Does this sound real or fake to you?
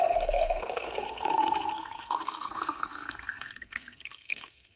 fake